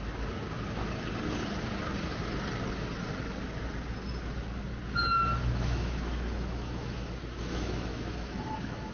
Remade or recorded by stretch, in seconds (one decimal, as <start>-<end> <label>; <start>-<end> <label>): 0.0-5.4 recorded; 5.4-8.9 remade